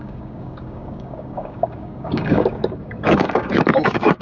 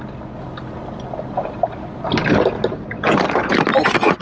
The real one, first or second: second